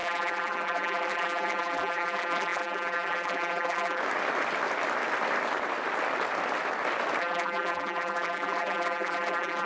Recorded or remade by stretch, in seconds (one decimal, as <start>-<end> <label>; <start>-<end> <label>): 0.0-4.0 remade; 4.0-7.2 recorded; 7.2-9.7 remade